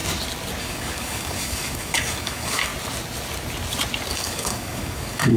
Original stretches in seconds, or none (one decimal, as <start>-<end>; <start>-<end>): 0.0-0.6; 2.7-4.1